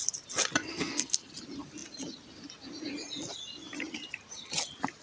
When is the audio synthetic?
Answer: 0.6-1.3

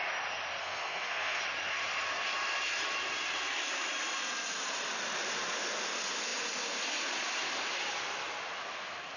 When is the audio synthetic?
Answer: 0.6-1.4

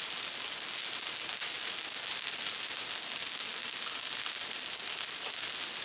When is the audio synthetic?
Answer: none

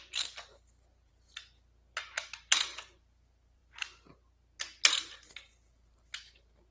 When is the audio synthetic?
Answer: none

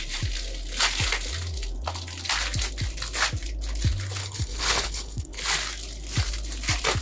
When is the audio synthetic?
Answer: 4.2-5.4